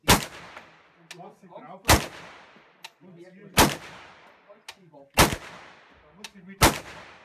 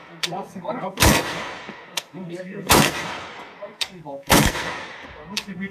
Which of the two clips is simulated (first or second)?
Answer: second